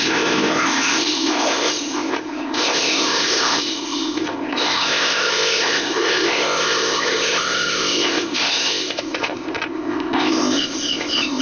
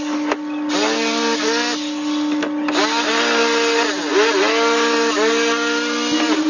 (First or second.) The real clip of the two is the second